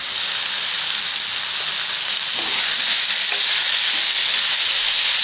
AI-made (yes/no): no